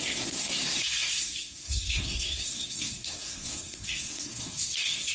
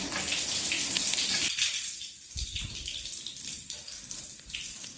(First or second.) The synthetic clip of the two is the first